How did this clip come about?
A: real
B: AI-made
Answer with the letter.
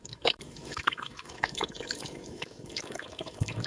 B